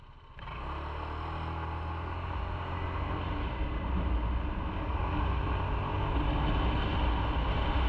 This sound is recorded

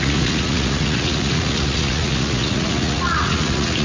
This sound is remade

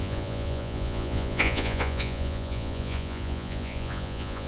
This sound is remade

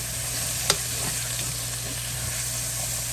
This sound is recorded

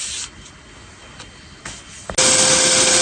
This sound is recorded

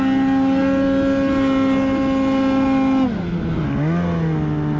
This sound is recorded